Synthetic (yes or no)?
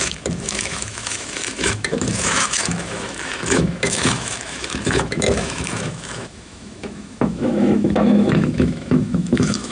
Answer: yes